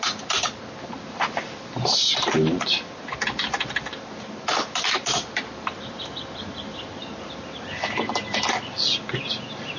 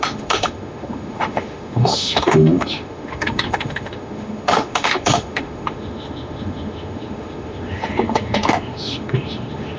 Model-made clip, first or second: second